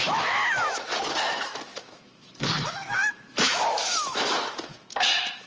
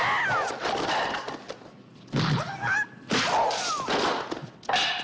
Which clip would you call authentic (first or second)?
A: second